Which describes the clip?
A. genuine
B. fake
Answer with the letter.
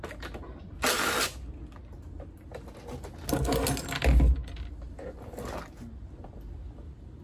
A